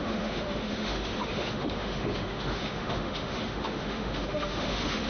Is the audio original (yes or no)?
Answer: no